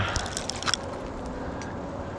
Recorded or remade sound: recorded